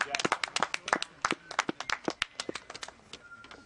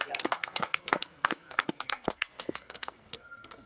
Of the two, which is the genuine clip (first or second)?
first